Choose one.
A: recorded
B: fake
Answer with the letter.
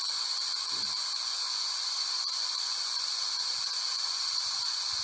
B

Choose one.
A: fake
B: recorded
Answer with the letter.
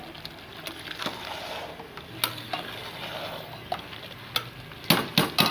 B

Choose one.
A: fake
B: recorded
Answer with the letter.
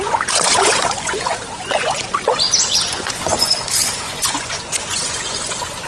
A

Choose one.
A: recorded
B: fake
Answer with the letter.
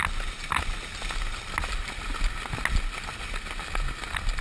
A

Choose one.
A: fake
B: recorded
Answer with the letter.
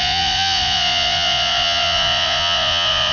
A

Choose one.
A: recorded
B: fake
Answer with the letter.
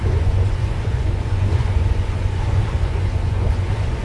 B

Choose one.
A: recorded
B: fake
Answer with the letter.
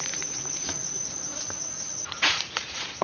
B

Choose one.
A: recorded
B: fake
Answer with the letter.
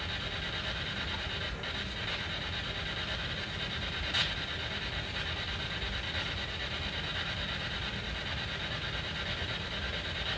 A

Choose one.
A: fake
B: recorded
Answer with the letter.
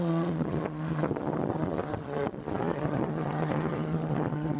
A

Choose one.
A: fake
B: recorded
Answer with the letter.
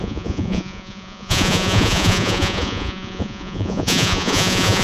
A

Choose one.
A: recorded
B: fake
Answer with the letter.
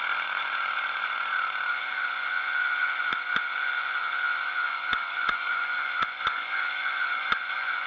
B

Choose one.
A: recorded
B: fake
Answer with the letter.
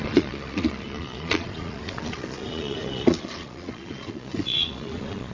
B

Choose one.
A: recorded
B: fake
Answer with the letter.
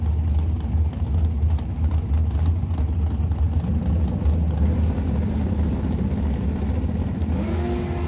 A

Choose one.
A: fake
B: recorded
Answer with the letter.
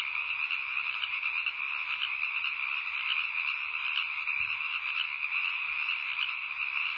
B